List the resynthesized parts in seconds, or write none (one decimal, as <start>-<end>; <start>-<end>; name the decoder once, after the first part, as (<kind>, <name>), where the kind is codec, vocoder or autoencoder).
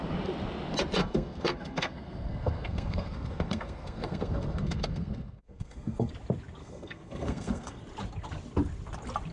1.0-6.1 (codec, SNAC); 6.6-7.8